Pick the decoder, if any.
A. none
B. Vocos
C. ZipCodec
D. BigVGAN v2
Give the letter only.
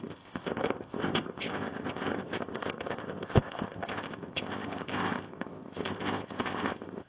C